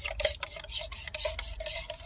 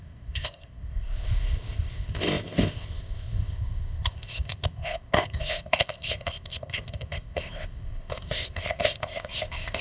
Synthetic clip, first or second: second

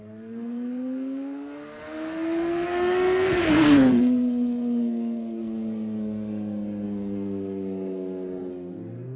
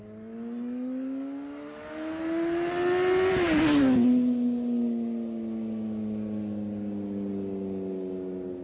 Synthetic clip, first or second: first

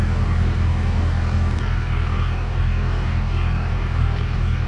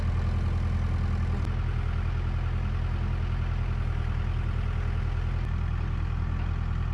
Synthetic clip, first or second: first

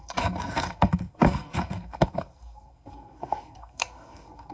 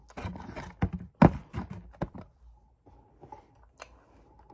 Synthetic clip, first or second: first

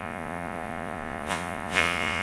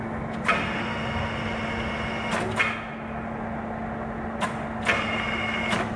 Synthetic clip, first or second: first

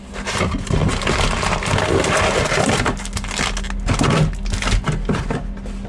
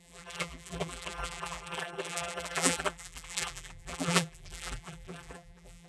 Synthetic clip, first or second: second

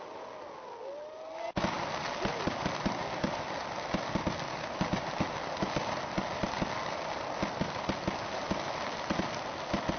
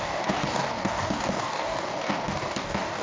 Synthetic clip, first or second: second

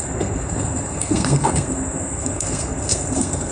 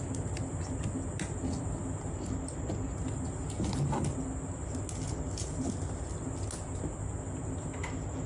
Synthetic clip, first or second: first